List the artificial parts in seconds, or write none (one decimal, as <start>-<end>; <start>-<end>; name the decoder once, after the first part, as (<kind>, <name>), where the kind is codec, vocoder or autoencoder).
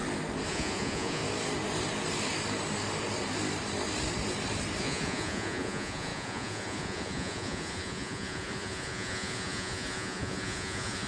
0.5-1.2 (vocoder, Vocos); 4.8-11.1